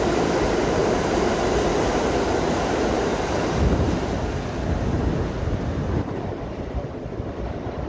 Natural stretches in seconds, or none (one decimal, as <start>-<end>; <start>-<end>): 0.8-5.2